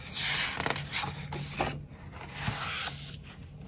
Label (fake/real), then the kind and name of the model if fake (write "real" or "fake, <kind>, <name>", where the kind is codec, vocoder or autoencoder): real